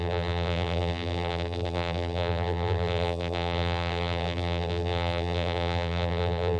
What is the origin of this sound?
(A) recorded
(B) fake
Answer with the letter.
B